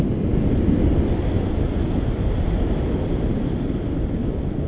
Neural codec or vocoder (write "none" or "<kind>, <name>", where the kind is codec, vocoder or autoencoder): none